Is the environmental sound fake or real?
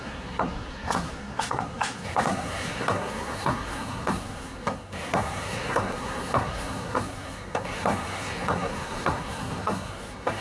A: fake